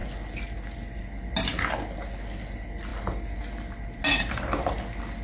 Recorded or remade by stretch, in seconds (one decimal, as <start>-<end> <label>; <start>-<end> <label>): 0.0-5.2 recorded